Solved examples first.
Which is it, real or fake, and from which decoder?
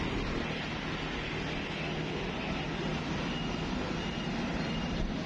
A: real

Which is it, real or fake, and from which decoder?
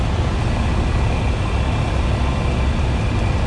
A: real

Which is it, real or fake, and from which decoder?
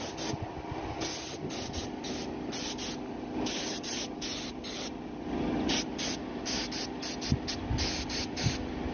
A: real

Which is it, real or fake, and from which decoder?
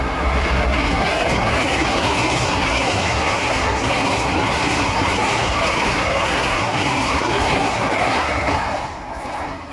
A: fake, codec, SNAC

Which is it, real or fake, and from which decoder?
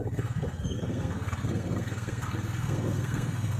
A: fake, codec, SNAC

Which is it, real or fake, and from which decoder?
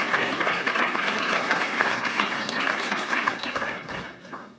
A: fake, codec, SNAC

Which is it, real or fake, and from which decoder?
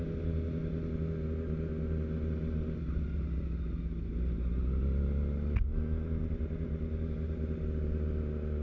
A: real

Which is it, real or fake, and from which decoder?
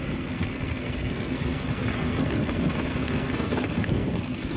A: fake, codec, SNAC